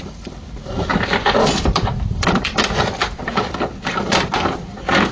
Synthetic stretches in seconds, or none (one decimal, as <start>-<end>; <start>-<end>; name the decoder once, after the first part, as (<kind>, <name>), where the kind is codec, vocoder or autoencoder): 0.9-2.6 (vocoder, BigVGAN v2); 3.0-5.1